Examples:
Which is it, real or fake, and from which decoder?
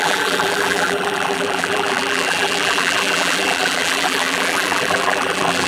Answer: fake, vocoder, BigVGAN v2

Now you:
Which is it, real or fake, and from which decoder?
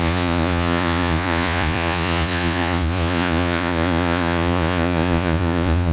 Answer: fake, vocoder, Vocos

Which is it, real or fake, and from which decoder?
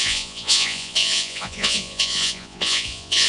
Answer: fake, vocoder, Vocos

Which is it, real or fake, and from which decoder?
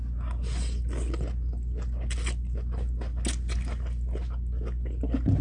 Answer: real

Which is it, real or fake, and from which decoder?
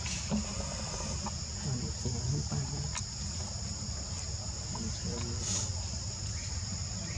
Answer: real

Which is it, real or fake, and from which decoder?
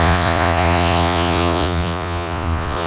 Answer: fake, vocoder, Vocos